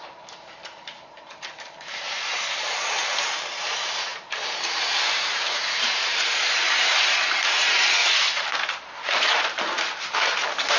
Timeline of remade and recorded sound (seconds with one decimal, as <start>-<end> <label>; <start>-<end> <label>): 0.0-10.8 remade